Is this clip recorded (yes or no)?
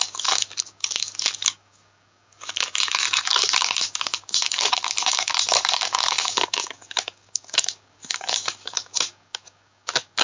no